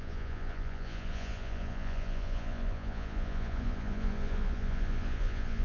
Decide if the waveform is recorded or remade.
remade